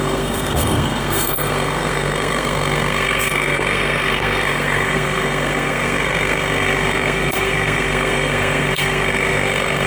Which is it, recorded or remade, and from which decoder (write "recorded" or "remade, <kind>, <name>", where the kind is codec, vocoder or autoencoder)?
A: remade, codec, SNAC